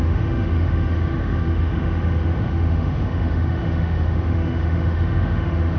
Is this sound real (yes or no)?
no